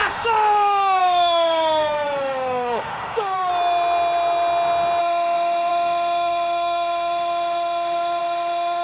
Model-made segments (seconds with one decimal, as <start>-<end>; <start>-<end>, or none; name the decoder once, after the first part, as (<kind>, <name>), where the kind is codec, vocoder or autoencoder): 0.0-3.5 (autoencoder, DAC-VAE); 5.0-8.8